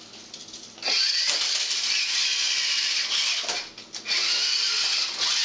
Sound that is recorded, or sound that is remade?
recorded